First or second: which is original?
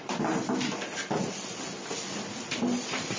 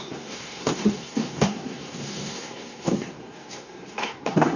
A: first